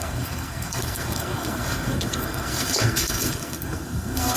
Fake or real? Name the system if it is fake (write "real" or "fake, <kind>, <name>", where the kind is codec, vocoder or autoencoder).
fake, codec, SNAC